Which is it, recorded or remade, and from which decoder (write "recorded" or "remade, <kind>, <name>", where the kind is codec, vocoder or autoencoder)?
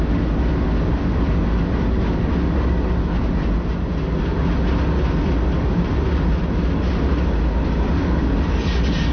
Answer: recorded